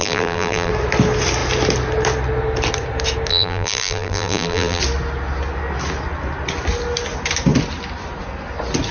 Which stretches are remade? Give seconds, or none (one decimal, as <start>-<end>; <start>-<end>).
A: 0.0-0.7; 3.3-4.8